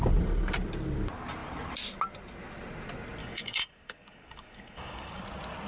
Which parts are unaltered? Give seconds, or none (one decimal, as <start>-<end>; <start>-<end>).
0.0-3.2; 5.2-5.7